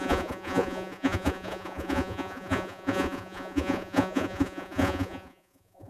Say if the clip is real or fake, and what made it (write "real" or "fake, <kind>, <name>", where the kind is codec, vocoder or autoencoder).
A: fake, vocoder, Vocos